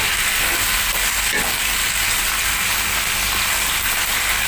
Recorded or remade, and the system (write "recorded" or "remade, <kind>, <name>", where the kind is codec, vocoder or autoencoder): recorded